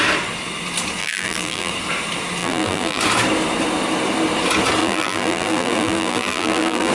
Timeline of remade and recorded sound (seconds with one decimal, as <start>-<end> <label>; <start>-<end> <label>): 0.0-1.0 recorded; 1.0-1.7 remade; 1.7-2.4 recorded; 2.4-3.0 remade; 3.0-4.8 recorded; 4.8-6.9 remade